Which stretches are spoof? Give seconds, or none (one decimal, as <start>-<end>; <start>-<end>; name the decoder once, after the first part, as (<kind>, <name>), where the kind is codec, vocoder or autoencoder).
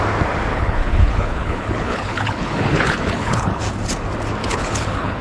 0.5-3.6 (codec, HILCodec); 4.4-5.2